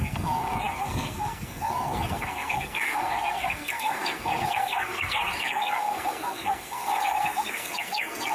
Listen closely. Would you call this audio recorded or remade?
remade